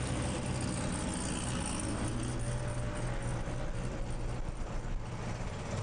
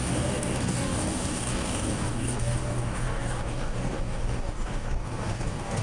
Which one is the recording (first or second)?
first